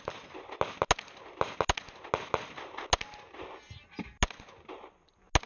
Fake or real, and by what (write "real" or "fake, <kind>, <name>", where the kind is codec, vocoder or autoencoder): real